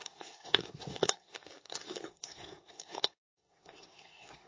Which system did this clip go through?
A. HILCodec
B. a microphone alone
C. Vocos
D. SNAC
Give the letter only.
D